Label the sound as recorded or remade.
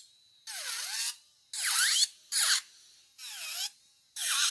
recorded